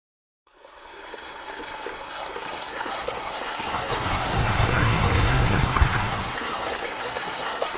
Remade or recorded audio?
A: remade